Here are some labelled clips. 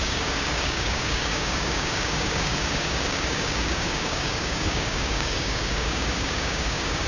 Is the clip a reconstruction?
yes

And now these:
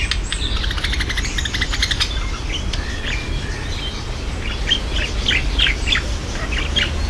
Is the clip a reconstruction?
no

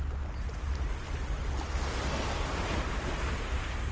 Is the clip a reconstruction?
no